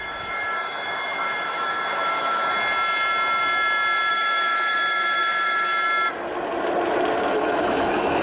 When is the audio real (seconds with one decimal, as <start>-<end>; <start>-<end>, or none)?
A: 2.5-4.1; 5.7-7.3